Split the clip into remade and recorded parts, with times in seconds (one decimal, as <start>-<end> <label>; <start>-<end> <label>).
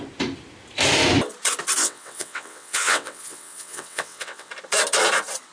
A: 0.0-1.8 recorded; 1.8-4.5 remade; 4.5-5.5 recorded